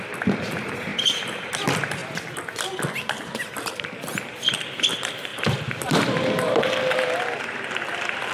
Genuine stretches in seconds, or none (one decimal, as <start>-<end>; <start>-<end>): 0.9-1.6